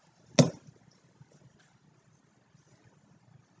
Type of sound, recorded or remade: recorded